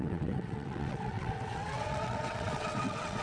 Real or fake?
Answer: fake